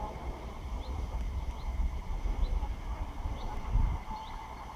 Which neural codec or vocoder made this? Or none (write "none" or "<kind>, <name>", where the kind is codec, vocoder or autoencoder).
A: vocoder, BigVGAN v2